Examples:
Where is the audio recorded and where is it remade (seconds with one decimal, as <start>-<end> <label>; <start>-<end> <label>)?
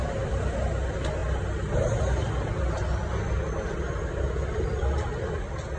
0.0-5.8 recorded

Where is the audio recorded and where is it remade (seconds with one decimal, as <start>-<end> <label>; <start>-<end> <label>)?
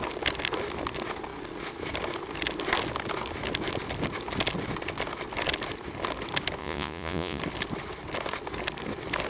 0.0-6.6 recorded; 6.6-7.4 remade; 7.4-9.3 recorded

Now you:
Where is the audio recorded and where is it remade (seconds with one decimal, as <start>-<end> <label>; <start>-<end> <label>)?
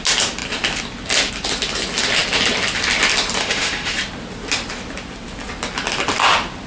0.0-3.4 recorded; 3.4-3.9 remade; 3.9-6.7 recorded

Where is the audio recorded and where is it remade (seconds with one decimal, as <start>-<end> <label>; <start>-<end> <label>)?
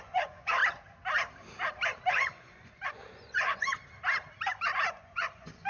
0.0-0.6 remade; 0.6-2.1 recorded; 2.1-3.8 remade; 3.8-4.9 recorded; 4.9-5.7 remade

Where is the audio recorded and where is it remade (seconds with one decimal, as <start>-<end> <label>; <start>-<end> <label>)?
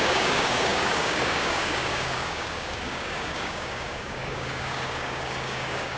0.0-6.0 remade